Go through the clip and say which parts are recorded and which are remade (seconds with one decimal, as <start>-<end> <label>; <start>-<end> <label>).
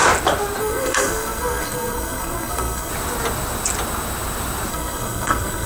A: 0.0-0.6 recorded; 0.6-2.9 remade; 2.9-4.7 recorded; 4.7-5.7 remade